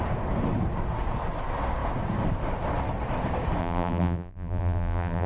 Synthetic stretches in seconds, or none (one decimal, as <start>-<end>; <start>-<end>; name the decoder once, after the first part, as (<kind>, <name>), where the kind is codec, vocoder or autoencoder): 3.6-5.3 (vocoder, BigVGAN v2)